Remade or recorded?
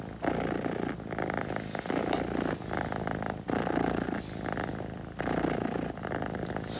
recorded